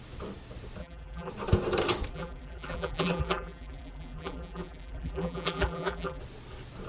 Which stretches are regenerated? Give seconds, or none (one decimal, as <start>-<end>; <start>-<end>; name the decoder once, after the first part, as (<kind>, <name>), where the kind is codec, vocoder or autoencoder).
0.8-1.3 (vocoder, BigVGAN v2); 2.1-6.2